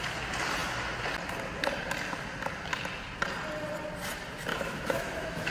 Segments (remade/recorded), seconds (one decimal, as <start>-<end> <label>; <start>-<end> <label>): 0.0-4.5 recorded; 4.5-5.5 remade